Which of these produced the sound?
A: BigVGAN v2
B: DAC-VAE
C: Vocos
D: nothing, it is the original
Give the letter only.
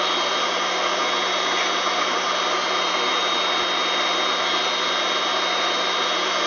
D